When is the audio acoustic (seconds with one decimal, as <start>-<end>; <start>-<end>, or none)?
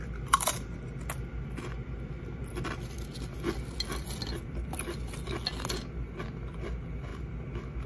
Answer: 0.0-7.9